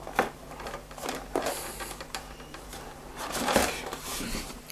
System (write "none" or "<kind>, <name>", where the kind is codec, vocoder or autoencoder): vocoder, BigVGAN v2